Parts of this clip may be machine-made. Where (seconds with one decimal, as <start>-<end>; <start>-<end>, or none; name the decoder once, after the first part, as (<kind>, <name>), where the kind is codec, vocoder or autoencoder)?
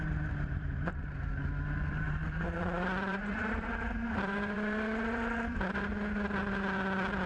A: 0.0-1.3 (vocoder, BigVGAN v2); 1.9-5.9; 6.4-7.3